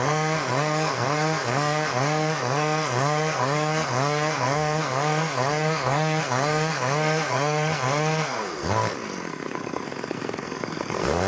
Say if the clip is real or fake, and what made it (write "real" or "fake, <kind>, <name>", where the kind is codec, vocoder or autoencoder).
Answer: fake, codec, SNAC